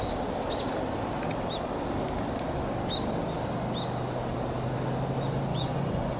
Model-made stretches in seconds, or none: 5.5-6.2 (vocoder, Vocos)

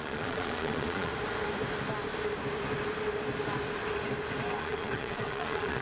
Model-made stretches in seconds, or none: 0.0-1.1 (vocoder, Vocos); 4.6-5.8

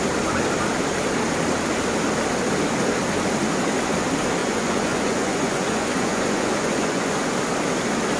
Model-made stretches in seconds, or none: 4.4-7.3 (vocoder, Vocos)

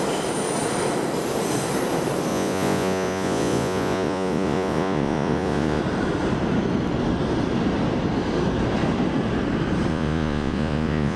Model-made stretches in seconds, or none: 2.3-5.8 (vocoder, Vocos); 9.9-11.2